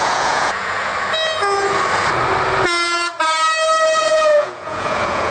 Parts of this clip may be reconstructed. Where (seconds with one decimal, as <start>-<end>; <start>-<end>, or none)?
0.0-0.9; 4.0-5.3